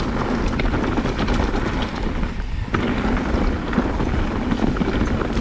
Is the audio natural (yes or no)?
yes